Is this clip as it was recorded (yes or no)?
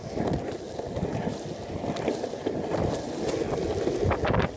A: yes